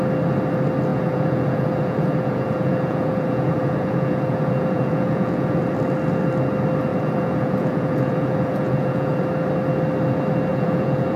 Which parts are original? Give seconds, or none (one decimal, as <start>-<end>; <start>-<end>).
0.0-0.9; 5.6-6.9; 9.2-10.5